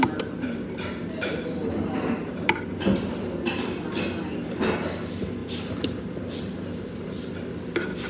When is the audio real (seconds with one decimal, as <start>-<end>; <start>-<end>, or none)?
0.0-8.1